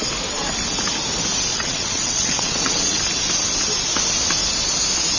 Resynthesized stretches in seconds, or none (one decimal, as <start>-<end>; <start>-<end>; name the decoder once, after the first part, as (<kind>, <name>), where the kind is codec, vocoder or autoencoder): 1.5-3.0 (vocoder, WaveNeXt)